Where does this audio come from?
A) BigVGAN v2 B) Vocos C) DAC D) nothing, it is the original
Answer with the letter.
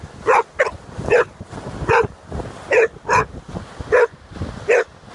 D